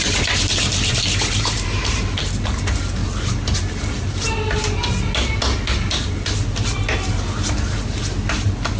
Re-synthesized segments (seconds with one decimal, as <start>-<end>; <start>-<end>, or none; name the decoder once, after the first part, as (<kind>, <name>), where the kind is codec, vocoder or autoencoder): 0.7-2.1 (vocoder, BigVGAN v2)